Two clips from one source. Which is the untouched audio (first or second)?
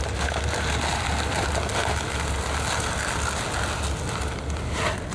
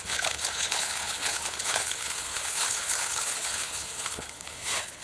first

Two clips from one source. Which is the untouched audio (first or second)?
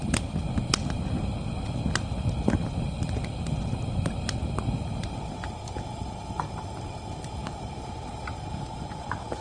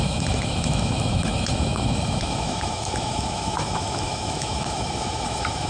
first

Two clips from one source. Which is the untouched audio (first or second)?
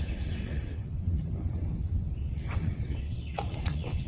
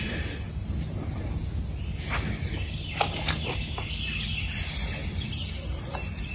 second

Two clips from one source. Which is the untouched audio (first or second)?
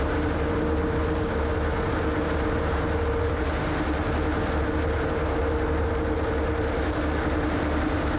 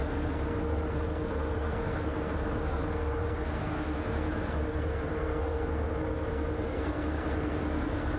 first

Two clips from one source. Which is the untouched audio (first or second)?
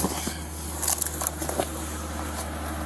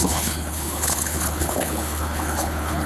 first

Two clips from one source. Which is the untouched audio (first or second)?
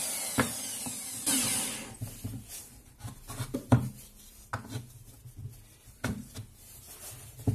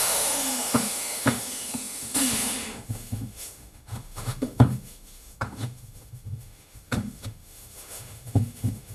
first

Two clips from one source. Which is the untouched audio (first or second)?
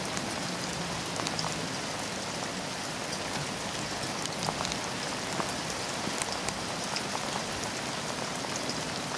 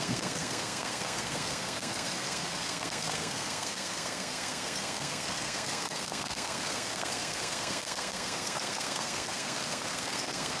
first